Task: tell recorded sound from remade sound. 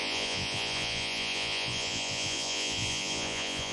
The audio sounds remade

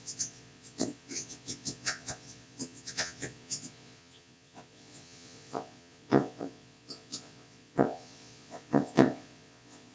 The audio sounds remade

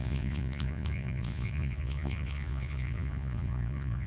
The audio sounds remade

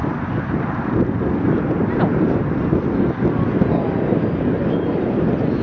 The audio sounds recorded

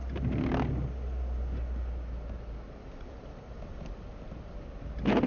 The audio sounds recorded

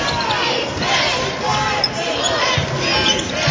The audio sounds recorded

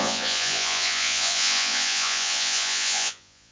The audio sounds remade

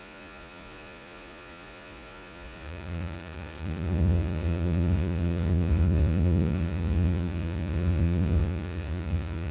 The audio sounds remade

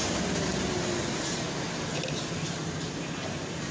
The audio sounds recorded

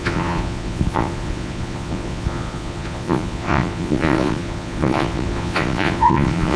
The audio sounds remade